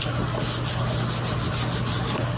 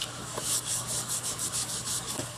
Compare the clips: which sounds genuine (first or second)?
first